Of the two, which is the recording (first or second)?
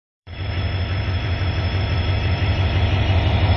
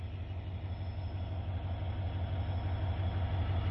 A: second